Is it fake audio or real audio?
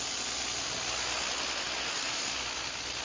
real